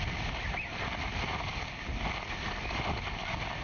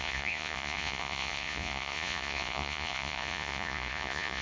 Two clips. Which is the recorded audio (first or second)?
first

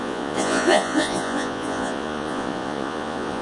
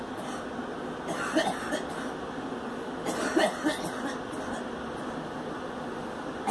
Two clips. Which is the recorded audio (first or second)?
second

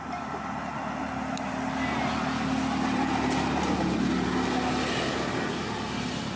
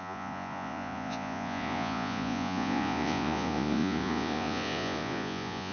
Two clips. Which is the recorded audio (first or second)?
first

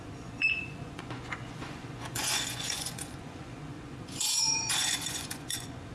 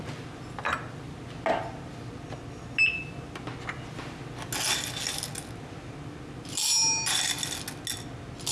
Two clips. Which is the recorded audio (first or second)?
second